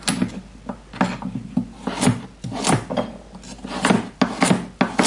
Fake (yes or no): no